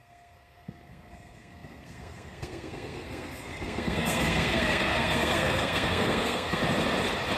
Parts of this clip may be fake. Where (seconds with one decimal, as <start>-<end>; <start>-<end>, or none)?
0.0-6.6